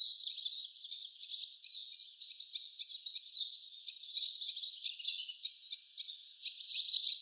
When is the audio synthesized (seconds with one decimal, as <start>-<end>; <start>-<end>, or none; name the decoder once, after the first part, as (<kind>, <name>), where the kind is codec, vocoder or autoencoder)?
6.2-7.2 (vocoder, BigVGAN v2)